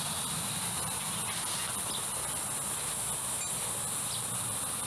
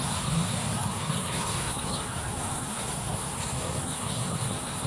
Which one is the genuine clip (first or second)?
first